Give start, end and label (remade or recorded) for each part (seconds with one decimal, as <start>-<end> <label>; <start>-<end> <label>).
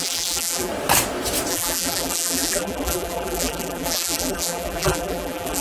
0.0-0.7 remade; 0.7-1.5 recorded; 1.5-5.6 remade